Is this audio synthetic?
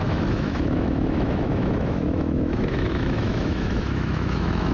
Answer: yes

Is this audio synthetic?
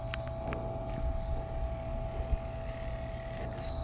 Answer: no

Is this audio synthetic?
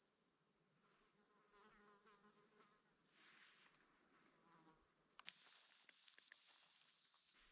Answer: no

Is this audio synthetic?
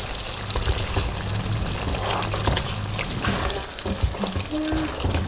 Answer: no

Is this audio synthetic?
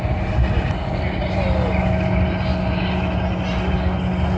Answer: no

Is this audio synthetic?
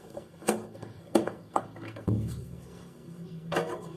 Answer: yes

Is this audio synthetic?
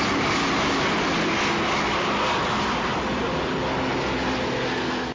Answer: no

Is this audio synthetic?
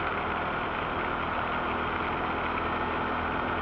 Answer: no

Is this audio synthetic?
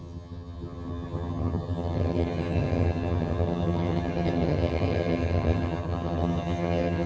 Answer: yes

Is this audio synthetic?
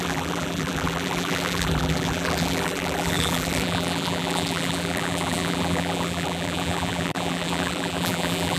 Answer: yes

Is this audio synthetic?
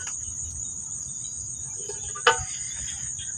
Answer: no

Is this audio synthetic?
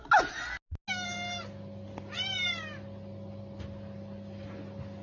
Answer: no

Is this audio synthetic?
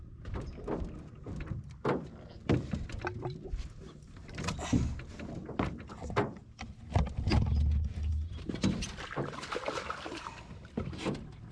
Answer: no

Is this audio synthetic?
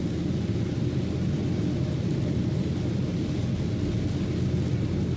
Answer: no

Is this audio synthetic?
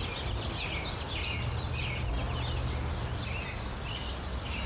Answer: no